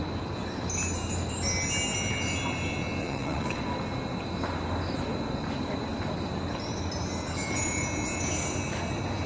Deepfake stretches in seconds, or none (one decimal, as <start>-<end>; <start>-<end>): 3.0-3.6